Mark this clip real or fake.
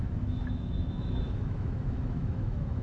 fake